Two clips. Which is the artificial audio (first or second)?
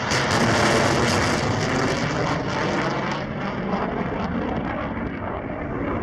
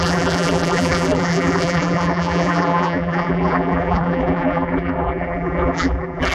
second